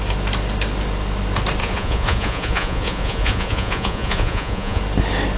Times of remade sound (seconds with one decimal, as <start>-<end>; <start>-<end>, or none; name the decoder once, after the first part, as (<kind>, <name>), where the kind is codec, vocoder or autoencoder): 1.6-4.8 (vocoder, Vocos)